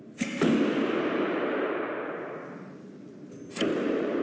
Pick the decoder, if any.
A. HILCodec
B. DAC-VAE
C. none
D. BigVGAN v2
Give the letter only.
C